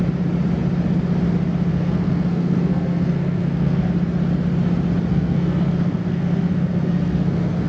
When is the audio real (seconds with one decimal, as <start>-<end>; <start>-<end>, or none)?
0.0-1.7; 3.9-5.1